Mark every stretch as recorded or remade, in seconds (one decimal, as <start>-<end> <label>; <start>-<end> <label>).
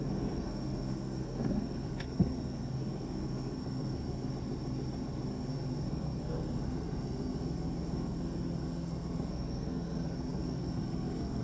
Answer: 0.0-4.3 remade; 4.3-5.3 recorded; 5.3-11.4 remade